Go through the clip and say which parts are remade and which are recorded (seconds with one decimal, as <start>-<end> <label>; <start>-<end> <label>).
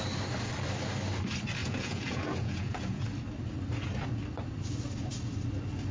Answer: 0.0-1.6 recorded; 1.6-3.0 remade; 3.0-5.9 recorded